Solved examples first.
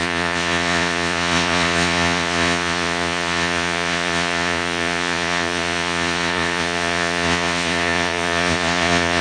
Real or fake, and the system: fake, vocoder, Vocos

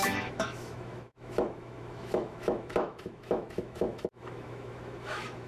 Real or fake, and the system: fake, autoencoder, DAC-VAE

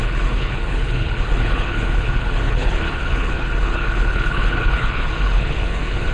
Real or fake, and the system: fake, codec, HILCodec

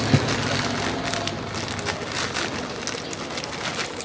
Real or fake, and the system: real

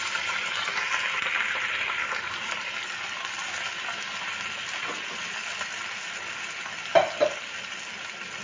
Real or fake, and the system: real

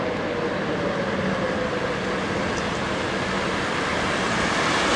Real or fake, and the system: real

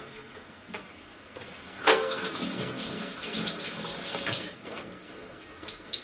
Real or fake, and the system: fake, codec, SNAC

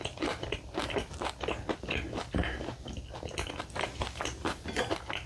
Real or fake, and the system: fake, vocoder, BigVGAN v2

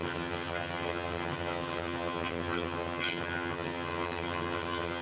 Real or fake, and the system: fake, vocoder, HiFi-GAN